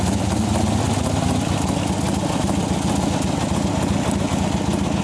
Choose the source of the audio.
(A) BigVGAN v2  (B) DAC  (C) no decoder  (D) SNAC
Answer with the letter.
C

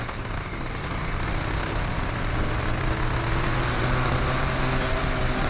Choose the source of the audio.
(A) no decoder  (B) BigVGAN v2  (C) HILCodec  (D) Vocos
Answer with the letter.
B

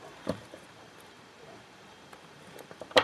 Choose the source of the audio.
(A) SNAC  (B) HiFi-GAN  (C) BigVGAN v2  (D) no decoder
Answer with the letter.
C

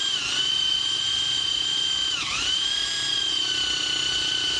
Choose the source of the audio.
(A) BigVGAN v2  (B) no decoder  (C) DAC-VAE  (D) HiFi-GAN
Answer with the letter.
B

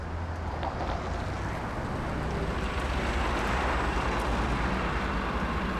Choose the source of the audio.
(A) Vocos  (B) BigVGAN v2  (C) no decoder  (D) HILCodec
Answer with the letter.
C